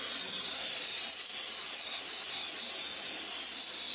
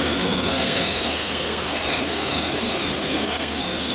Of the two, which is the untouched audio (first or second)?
first